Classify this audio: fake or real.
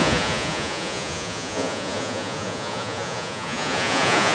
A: fake